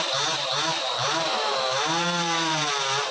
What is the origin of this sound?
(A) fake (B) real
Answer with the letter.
A